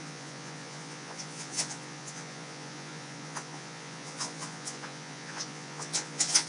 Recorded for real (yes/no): no